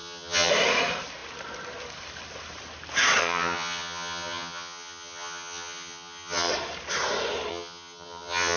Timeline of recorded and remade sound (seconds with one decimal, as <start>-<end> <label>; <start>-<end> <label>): 0.0-0.5 remade; 0.5-3.2 recorded; 3.2-6.5 remade; 6.5-7.5 recorded; 7.5-8.6 remade